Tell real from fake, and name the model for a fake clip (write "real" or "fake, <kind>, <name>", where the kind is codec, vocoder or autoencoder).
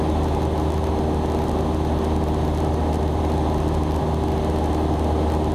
real